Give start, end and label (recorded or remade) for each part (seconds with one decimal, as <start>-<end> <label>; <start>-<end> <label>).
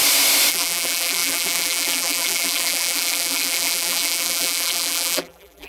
0.0-0.5 recorded; 0.5-5.7 remade